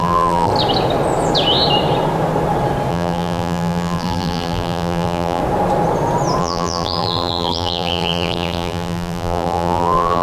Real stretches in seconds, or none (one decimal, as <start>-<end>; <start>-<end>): 0.5-2.9; 5.4-6.4